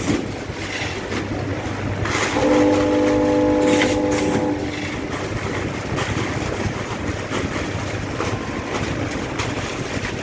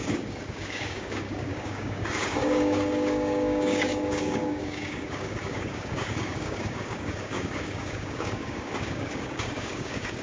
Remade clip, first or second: second